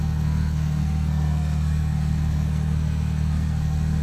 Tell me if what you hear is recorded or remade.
remade